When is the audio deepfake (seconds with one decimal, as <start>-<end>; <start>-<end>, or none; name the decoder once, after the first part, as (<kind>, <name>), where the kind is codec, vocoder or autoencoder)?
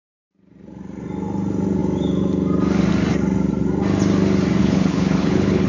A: 4.6-5.7 (codec, HILCodec)